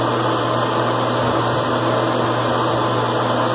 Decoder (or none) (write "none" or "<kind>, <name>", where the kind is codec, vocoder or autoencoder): none